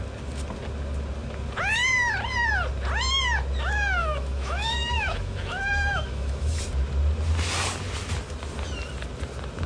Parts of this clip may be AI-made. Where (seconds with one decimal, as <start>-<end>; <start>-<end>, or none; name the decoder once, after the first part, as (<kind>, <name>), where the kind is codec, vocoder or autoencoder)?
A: 4.0-6.6 (autoencoder, DAC-VAE)

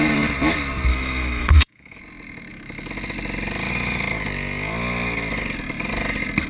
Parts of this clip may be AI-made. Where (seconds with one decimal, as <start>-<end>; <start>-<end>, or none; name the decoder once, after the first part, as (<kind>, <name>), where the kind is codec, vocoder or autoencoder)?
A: 0.9-2.0 (autoencoder, DAC-VAE)

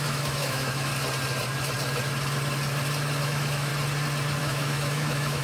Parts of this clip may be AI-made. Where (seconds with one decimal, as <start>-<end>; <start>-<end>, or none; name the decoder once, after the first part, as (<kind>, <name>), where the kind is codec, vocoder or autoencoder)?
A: 0.0-0.9 (autoencoder, DAC-VAE); 3.2-3.7; 4.4-5.4

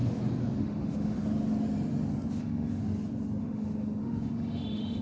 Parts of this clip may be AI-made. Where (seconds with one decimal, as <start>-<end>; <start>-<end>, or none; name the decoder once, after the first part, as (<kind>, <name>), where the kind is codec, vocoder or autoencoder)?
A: 0.6-1.2 (autoencoder, DAC-VAE); 2.4-2.8; 3.4-5.0

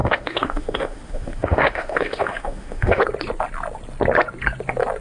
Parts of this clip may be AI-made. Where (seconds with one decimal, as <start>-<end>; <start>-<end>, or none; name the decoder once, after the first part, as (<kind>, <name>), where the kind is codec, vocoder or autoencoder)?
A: 0.0-3.0 (autoencoder, DAC-VAE)

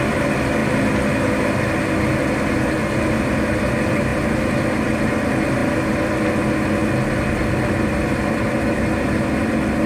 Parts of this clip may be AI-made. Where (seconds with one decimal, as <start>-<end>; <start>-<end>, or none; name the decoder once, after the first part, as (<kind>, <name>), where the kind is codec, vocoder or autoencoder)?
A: none